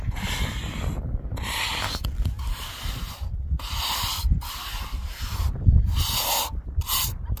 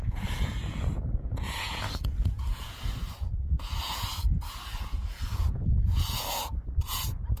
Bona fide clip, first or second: first